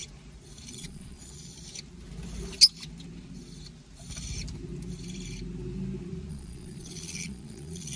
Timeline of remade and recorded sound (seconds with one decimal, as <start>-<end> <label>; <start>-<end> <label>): 0.0-0.7 recorded; 0.7-1.5 remade; 1.5-6.3 recorded; 6.3-8.0 remade